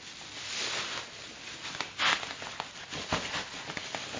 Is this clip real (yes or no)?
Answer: yes